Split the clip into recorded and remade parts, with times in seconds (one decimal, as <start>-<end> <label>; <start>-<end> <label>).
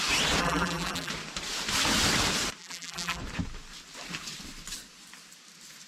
0.0-0.4 recorded; 0.4-1.1 remade; 1.1-2.6 recorded; 2.6-3.2 remade; 3.2-5.9 recorded